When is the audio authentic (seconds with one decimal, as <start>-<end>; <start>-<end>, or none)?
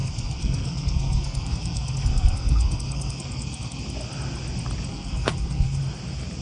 3.8-4.9; 5.8-6.4